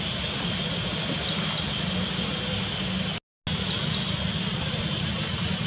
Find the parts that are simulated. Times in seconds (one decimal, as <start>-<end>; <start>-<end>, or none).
none